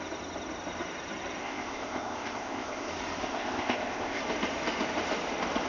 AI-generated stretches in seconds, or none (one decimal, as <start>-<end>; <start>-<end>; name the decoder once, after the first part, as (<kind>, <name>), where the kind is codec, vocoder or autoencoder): 1.4-2.9 (codec, ZipCodec); 3.3-4.2